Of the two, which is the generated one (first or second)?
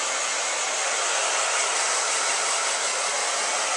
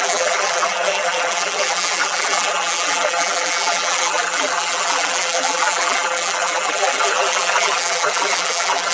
second